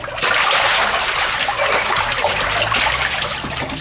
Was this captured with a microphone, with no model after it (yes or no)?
yes